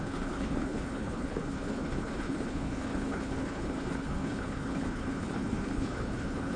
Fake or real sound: fake